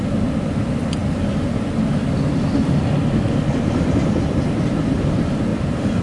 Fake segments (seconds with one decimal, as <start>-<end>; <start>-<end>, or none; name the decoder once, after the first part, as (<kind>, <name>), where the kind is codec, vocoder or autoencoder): 5.5-6.0 (vocoder, BigVGAN v2)